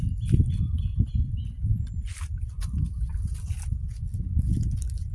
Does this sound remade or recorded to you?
recorded